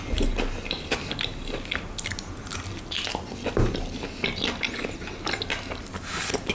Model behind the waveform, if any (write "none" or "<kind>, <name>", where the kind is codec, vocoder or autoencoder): none